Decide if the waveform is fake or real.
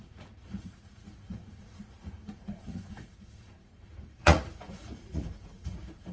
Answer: fake